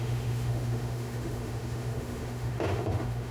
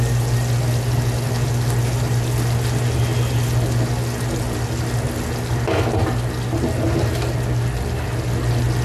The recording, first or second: second